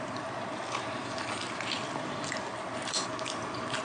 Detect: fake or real fake